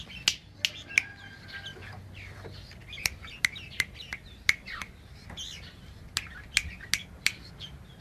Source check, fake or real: real